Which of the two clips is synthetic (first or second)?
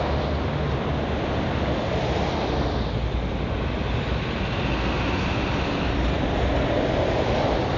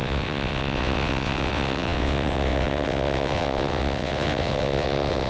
second